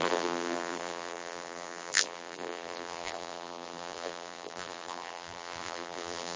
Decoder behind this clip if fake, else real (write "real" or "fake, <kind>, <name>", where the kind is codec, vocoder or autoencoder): fake, vocoder, BigVGAN v2